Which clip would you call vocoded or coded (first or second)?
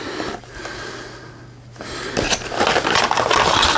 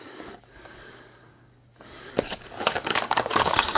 second